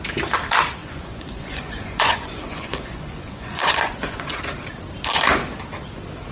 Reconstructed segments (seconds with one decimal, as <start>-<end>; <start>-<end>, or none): 0.8-4.4